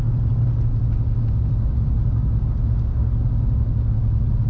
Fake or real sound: real